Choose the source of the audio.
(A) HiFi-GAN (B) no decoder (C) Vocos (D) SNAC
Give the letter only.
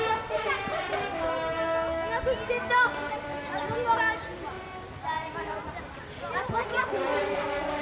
B